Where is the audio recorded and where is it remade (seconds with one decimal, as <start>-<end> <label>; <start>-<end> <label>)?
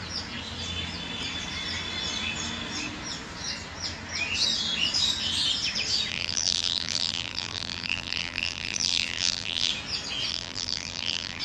0.0-6.1 recorded; 6.1-9.7 remade; 9.7-10.3 recorded; 10.3-11.4 remade